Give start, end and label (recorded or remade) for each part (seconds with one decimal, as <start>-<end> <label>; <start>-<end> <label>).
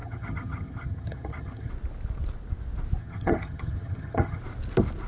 0.0-1.7 remade; 1.7-3.0 recorded; 3.0-4.4 remade; 4.4-5.1 recorded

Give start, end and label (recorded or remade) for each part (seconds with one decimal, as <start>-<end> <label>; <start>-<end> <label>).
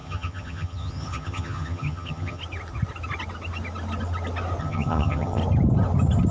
0.0-2.4 remade; 2.4-4.6 recorded; 4.6-5.4 remade; 5.4-6.3 recorded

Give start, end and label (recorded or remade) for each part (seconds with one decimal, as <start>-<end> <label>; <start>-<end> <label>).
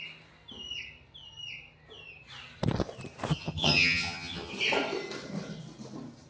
0.0-3.3 recorded; 3.3-4.5 remade; 4.5-6.3 recorded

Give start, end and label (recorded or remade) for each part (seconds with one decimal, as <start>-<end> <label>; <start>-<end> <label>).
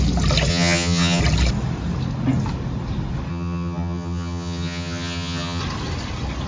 0.0-0.5 recorded; 0.5-1.2 remade; 1.2-3.3 recorded; 3.3-5.6 remade; 5.6-6.5 recorded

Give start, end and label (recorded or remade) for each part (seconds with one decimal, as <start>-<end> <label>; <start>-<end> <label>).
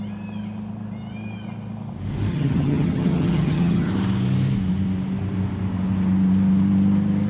0.0-2.3 recorded; 2.3-3.9 remade; 3.9-7.3 recorded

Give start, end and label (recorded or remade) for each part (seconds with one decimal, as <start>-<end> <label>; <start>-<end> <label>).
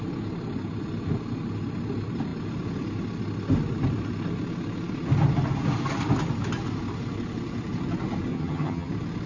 0.0-8.3 recorded; 8.3-8.9 remade; 8.9-9.3 recorded